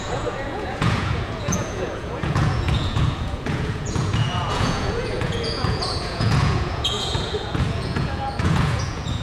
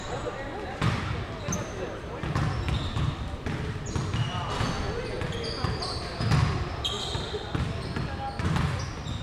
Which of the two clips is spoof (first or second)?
first